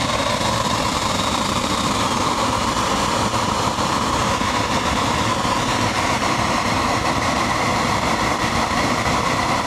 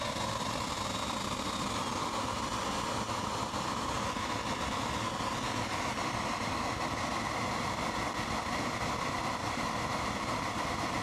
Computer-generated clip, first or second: first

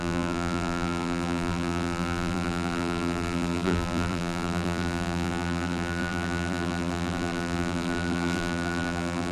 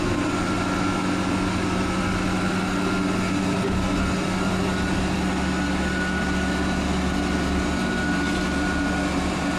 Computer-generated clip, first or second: first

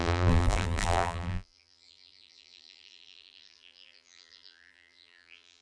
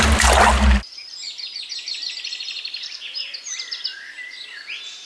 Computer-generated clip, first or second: first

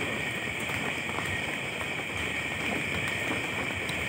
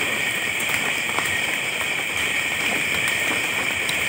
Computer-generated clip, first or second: second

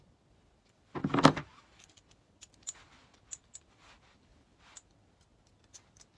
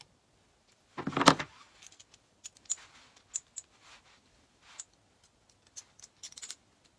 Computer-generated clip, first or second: first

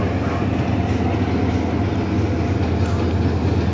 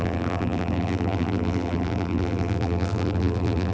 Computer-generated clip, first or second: second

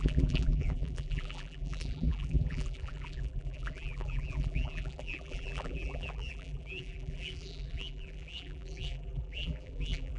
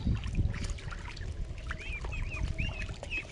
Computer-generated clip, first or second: first